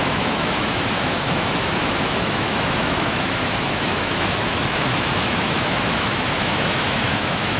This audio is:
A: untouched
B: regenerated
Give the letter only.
B